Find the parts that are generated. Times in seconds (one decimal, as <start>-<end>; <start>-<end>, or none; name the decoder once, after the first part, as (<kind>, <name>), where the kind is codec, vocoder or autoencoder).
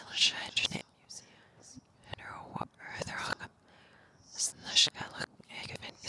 none